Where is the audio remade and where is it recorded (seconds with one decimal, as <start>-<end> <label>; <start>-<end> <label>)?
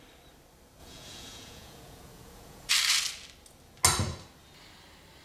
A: 0.0-0.8 recorded; 0.8-2.7 remade; 2.7-5.2 recorded